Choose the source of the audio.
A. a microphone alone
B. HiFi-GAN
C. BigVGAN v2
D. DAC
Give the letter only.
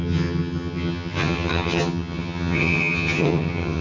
B